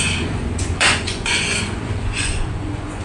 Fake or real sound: fake